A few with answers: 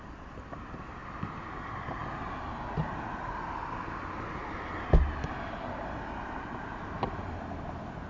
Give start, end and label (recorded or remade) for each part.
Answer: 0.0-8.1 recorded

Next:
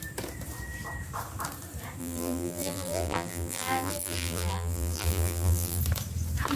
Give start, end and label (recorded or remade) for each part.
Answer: 0.0-2.0 recorded; 2.0-5.8 remade; 5.8-6.6 recorded

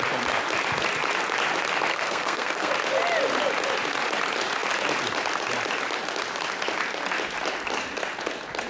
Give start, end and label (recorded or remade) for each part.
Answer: 0.0-1.9 recorded; 1.9-2.7 remade; 2.7-8.7 recorded

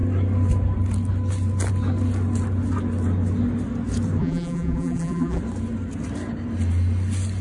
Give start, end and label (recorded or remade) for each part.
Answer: 0.0-4.2 recorded; 4.2-5.4 remade; 5.4-7.4 recorded